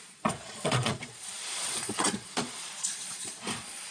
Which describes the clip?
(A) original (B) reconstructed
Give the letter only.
B